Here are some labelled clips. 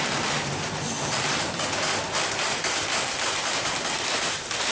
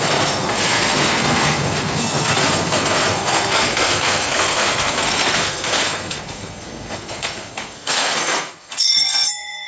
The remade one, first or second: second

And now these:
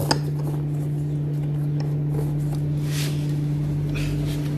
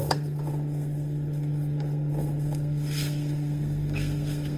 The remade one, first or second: second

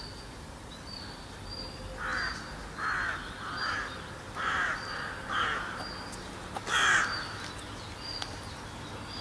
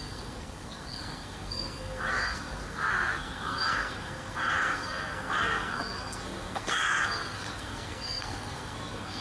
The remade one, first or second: second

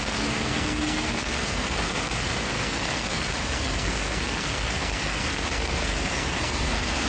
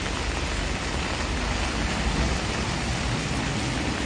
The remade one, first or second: first